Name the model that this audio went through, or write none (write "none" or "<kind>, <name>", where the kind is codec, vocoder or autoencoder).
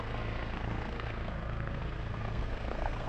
codec, SNAC